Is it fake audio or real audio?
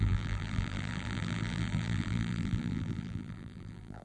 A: fake